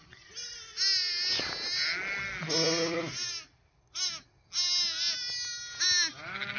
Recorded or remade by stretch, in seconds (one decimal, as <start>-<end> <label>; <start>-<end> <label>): 0.0-6.6 recorded